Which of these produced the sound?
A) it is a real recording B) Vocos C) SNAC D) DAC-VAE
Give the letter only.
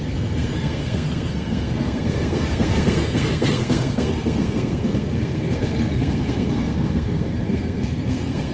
C